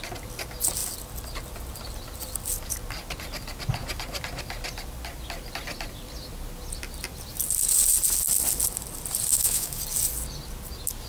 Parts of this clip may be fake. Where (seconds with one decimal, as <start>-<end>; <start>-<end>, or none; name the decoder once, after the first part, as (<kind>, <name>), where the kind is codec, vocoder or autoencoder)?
9.3-9.8 (autoencoder, DAC-VAE)